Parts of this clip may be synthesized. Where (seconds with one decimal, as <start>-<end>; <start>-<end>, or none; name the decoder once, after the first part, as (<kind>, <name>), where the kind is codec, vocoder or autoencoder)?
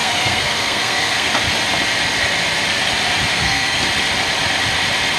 0.0-1.3 (codec, SNAC); 3.3-3.8